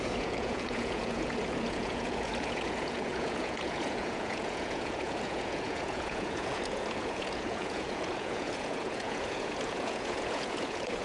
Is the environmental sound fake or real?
fake